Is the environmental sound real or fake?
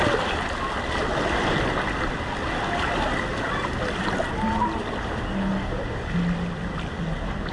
real